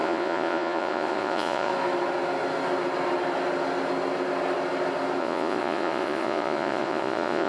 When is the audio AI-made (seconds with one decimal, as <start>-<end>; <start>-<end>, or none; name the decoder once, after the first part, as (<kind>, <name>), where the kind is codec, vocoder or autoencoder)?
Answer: 0.0-1.7 (vocoder, Vocos); 5.2-7.5